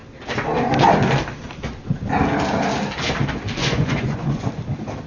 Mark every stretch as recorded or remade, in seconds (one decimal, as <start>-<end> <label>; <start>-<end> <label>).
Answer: 0.0-3.6 recorded; 3.6-4.5 remade; 4.5-5.1 recorded